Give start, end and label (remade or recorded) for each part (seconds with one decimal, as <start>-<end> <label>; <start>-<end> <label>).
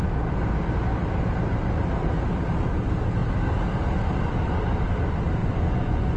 0.0-5.4 recorded; 5.4-6.2 remade